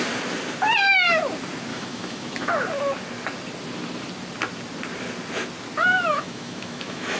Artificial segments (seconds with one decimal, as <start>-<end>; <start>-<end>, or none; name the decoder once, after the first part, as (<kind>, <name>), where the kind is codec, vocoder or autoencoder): 1.7-2.5 (autoencoder, DAC-VAE); 6.1-7.2